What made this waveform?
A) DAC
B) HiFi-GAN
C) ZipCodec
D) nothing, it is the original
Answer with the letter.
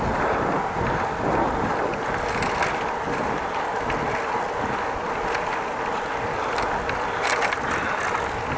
D